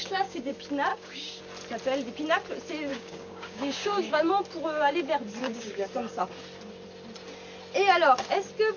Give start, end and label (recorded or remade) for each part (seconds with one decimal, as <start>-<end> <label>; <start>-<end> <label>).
0.0-0.5 remade; 0.5-0.9 recorded; 0.9-1.4 remade; 1.4-2.9 recorded; 2.9-4.3 remade; 4.3-5.4 recorded; 5.4-5.9 remade; 5.9-8.8 recorded